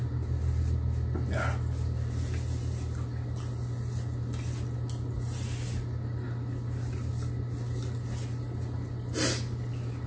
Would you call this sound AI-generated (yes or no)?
no